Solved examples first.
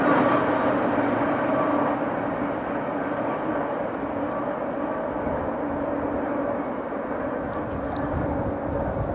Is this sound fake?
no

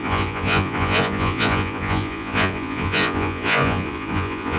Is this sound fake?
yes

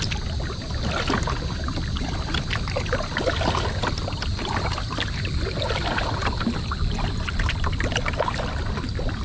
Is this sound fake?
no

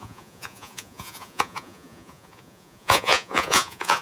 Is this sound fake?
yes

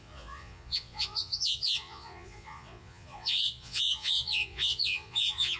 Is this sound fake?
yes